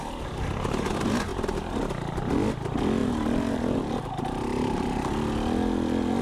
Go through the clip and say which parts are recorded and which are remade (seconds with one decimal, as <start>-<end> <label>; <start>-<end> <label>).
0.0-1.3 recorded; 1.3-1.8 remade; 1.8-3.0 recorded; 3.0-5.1 remade; 5.1-6.2 recorded